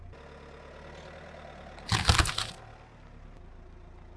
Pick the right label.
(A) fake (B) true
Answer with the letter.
B